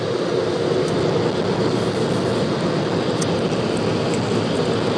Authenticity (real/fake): real